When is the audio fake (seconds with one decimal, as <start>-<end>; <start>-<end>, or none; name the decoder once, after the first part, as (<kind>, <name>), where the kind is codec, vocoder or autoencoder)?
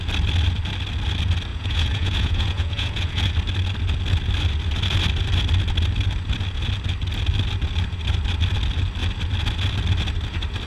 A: 1.5-3.2 (vocoder, Vocos)